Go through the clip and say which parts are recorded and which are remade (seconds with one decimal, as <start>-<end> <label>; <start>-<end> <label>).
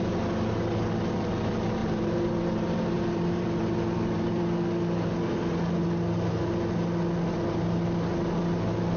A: 0.0-1.8 recorded; 1.8-4.4 remade; 4.4-9.0 recorded